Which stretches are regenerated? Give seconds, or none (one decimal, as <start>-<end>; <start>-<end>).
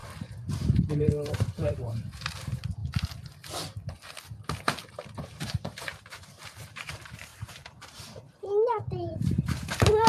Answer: 0.5-2.8; 4.9-10.1